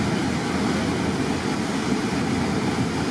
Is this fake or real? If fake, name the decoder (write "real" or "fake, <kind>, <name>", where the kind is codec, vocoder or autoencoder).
real